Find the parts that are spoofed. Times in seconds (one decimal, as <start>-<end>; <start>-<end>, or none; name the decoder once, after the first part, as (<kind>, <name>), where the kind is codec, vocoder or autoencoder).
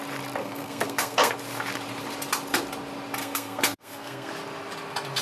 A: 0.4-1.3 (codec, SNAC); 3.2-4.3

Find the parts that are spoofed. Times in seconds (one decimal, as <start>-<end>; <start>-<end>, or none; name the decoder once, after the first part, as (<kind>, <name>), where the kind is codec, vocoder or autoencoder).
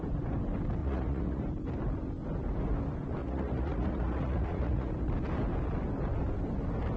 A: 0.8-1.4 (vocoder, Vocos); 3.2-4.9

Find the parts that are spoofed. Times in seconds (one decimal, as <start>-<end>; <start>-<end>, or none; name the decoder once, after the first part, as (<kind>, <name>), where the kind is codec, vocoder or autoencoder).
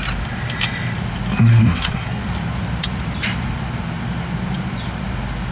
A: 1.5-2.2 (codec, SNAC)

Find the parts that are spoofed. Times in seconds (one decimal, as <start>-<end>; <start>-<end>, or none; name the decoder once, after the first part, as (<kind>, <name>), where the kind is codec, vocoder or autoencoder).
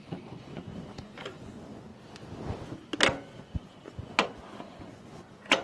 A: 0.0-1.9 (vocoder, Vocos); 3.4-5.6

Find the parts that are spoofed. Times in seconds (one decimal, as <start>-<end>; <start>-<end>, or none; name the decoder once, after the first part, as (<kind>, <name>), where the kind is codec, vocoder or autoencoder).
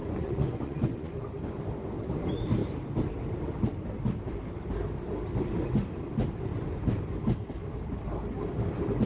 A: 0.0-1.1 (vocoder, Vocos)